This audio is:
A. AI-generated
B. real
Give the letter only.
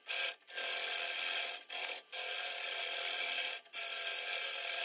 B